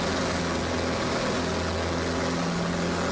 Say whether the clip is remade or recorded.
recorded